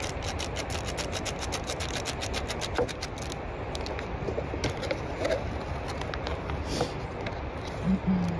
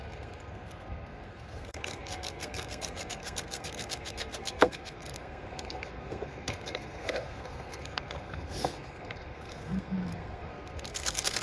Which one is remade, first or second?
second